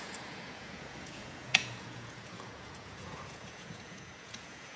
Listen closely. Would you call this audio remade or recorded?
remade